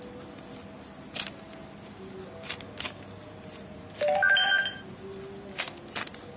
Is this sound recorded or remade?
recorded